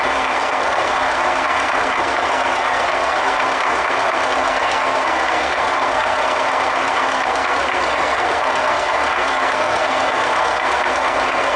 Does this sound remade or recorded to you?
remade